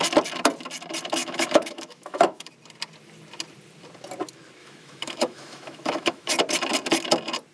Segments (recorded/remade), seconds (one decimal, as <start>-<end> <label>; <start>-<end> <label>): 0.0-1.2 recorded; 1.2-2.5 remade; 2.5-4.6 recorded; 4.6-6.3 remade; 6.3-7.5 recorded

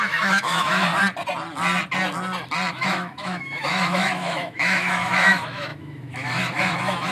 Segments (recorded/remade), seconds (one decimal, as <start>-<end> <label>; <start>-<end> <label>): 0.0-0.9 remade; 0.9-2.7 recorded; 2.7-7.1 remade

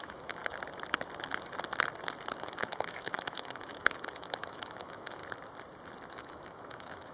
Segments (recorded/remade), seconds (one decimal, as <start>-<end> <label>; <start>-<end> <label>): 0.0-0.4 remade; 0.4-2.4 recorded; 2.4-5.2 remade; 5.2-6.1 recorded; 6.1-7.1 remade